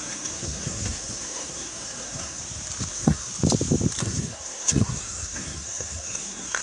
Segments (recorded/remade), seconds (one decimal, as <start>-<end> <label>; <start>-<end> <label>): 0.0-2.4 remade; 2.4-2.9 recorded; 2.9-3.3 remade; 3.3-4.0 recorded; 4.0-6.6 remade